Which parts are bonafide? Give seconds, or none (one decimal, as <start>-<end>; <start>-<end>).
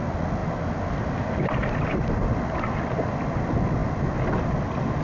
0.0-5.0